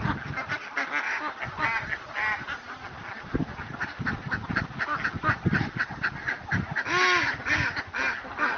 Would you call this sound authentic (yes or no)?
yes